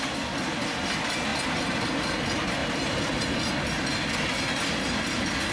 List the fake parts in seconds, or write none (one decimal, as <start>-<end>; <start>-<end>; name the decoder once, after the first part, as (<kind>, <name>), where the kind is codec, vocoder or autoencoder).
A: none